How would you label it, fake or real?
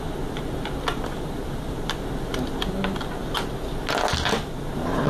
real